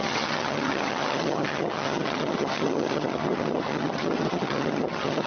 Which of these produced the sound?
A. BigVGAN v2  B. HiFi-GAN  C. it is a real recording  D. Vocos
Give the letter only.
B